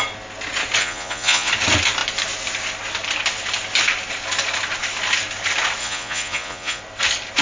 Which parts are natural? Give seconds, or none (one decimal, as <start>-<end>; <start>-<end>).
0.0-0.8; 1.5-5.8; 6.8-7.4